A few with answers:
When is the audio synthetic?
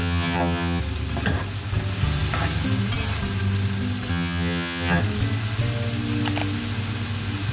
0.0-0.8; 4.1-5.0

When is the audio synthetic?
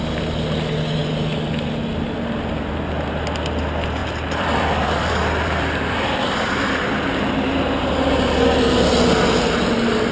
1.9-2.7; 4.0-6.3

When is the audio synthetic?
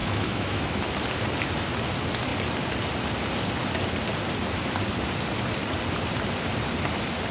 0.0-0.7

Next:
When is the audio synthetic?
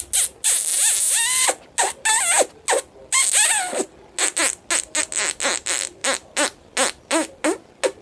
none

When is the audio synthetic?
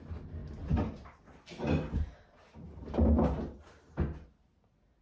none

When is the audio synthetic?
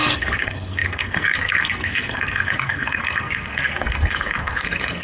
0.0-5.0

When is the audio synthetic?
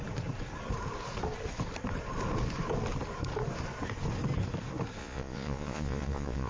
5.0-6.5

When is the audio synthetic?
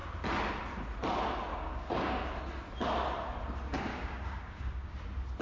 1.5-2.4; 3.9-5.0